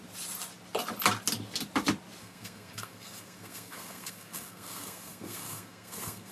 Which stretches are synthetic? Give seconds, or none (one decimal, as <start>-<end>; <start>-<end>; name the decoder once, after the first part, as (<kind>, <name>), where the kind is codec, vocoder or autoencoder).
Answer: 2.2-6.3 (codec, SNAC)